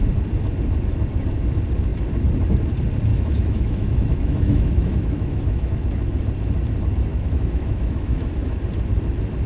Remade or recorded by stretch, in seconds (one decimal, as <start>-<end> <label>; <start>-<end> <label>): 0.0-3.1 recorded; 3.1-5.7 remade; 5.7-7.1 recorded; 7.1-8.6 remade; 8.6-9.5 recorded